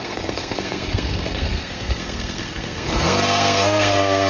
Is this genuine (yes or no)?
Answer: no